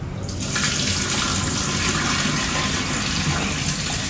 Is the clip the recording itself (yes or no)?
yes